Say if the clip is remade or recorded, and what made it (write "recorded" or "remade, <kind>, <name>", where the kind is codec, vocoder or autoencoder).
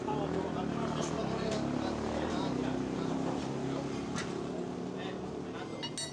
recorded